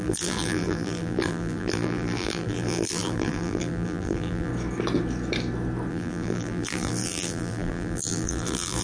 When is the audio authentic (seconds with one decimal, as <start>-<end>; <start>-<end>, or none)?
4.5-5.9